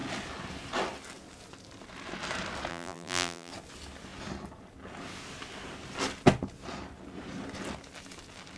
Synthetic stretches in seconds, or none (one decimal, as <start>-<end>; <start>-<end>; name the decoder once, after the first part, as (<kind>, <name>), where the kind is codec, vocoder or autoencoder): 2.7-3.5 (vocoder, BigVGAN v2)